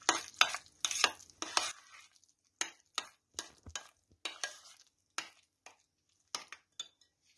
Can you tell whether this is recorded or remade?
recorded